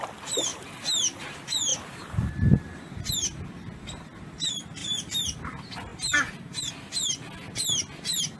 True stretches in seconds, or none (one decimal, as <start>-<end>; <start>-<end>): 0.0-0.5; 1.2-1.7; 3.1-4.8; 5.5-5.9; 6.7-8.4